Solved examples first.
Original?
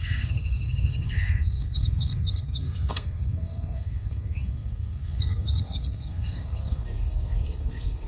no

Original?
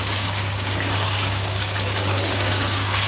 no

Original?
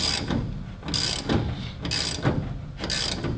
yes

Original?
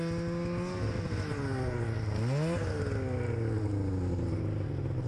yes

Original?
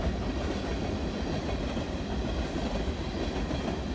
yes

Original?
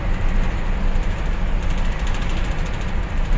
yes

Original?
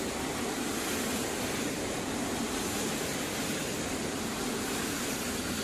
yes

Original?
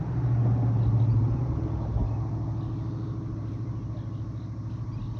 yes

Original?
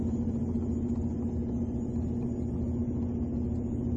yes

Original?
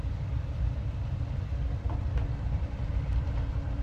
no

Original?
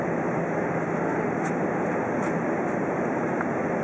yes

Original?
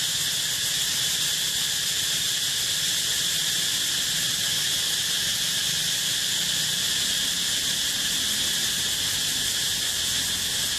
yes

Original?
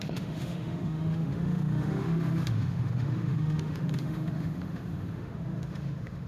no